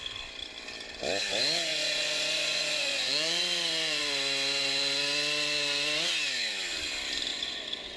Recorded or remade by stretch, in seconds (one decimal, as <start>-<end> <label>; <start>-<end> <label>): 0.0-1.7 recorded; 1.7-4.0 remade; 4.0-7.3 recorded; 7.3-8.0 remade